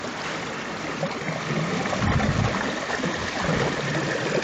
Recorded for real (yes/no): yes